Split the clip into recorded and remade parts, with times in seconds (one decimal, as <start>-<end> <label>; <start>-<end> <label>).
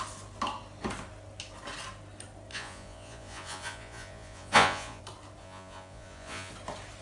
0.0-2.5 recorded; 2.5-5.0 remade; 5.0-5.4 recorded; 5.4-6.5 remade; 6.5-7.0 recorded